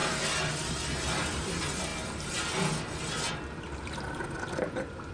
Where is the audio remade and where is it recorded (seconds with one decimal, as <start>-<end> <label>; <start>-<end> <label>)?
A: 0.0-5.1 recorded

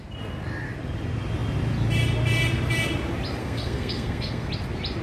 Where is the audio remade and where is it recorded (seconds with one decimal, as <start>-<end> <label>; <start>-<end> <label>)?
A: 0.0-3.4 recorded; 3.4-4.5 remade; 4.5-5.0 recorded

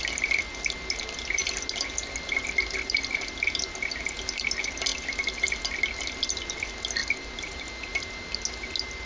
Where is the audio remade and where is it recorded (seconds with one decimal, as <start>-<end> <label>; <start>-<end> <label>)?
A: 0.0-9.1 recorded

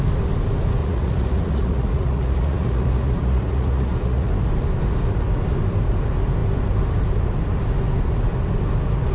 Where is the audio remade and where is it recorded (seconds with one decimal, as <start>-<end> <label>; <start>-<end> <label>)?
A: 0.0-0.8 recorded; 0.8-4.3 remade; 4.3-9.1 recorded

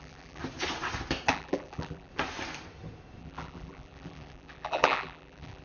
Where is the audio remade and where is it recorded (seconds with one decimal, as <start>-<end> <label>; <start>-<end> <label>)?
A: 0.0-0.4 remade; 0.4-1.3 recorded; 1.3-2.1 remade; 2.1-3.2 recorded; 3.2-5.6 remade

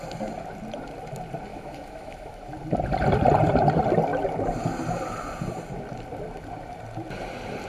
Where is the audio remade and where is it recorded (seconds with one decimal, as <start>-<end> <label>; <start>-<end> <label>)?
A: 0.0-1.5 recorded; 1.5-2.5 remade; 2.5-7.7 recorded

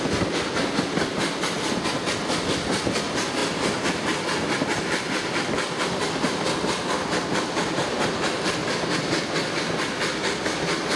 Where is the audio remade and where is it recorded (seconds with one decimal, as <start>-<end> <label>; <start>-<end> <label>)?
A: 0.0-11.0 recorded